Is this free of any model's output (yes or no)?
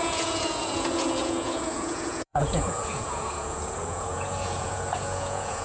no